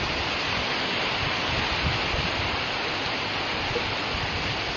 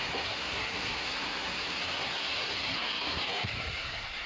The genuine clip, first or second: first